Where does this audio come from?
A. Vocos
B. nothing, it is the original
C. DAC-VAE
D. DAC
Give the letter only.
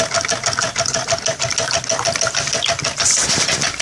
B